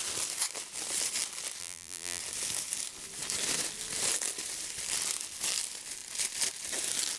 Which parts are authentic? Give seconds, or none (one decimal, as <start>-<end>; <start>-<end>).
0.0-1.6; 2.2-7.2